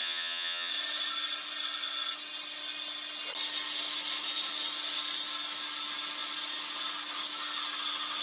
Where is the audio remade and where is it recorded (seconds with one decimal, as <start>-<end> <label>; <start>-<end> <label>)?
0.0-0.7 remade; 0.7-8.2 recorded